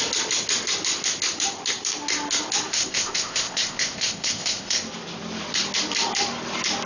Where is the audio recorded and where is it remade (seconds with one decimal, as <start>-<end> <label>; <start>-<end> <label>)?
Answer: 0.0-2.7 recorded; 2.7-4.8 remade; 4.8-6.9 recorded